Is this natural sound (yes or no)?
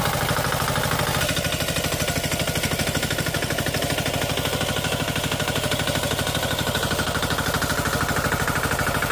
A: yes